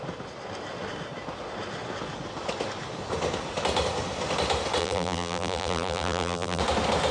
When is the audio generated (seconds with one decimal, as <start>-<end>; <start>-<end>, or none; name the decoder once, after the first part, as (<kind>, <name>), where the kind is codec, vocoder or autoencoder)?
4.8-6.6 (vocoder, BigVGAN v2)